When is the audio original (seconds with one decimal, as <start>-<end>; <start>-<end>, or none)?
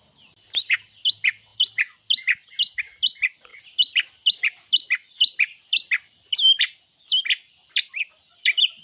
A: 0.0-8.8